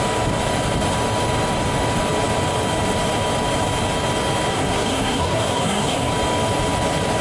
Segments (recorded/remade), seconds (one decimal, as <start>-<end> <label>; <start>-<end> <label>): 0.0-4.5 recorded; 4.5-6.1 remade; 6.1-7.2 recorded